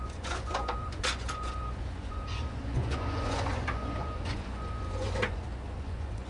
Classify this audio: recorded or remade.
remade